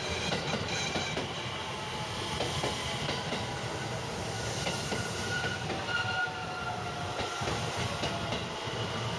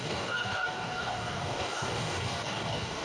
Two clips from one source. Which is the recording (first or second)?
first